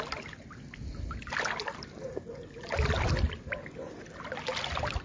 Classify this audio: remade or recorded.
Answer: recorded